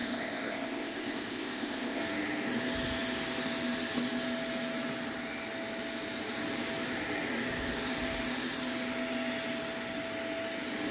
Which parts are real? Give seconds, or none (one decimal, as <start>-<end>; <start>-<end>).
2.0-10.9